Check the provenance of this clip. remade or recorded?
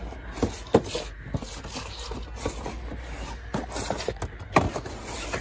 recorded